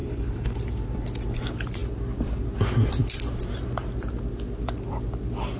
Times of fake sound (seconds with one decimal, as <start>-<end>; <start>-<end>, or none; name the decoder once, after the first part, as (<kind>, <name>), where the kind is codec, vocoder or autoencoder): 0.0-0.6 (codec, HILCodec)